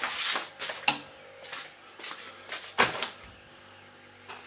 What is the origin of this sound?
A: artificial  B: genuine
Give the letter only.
B